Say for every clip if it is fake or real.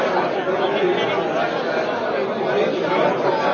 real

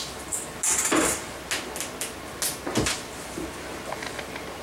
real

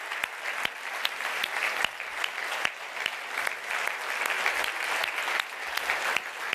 real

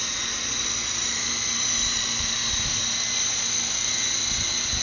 real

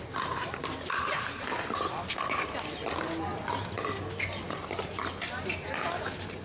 real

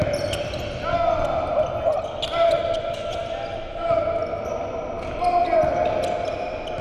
real